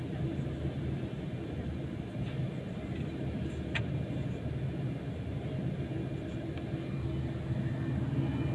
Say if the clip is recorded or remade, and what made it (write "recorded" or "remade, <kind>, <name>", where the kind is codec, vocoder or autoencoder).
recorded